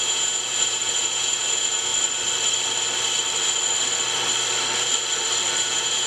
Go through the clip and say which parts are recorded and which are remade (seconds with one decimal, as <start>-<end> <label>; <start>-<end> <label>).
0.0-1.9 remade; 1.9-5.6 recorded; 5.6-6.1 remade